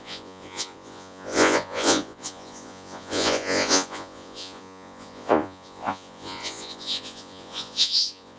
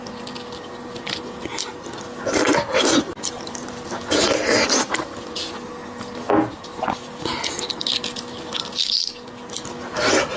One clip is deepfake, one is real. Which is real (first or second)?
second